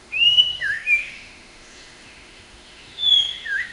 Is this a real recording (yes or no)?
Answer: no